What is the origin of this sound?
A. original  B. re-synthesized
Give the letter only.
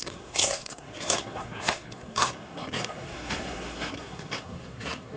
B